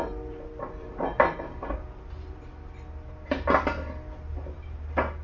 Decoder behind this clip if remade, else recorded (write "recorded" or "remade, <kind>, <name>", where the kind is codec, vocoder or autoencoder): recorded